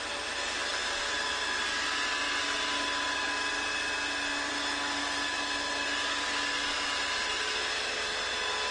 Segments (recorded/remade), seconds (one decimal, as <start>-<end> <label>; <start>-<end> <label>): 0.0-8.7 recorded